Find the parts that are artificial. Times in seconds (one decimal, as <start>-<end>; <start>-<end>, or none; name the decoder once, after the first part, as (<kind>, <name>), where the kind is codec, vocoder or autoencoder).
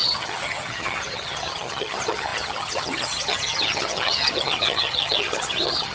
0.0-5.9 (vocoder, HiFi-GAN)